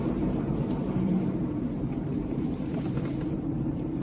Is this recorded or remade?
remade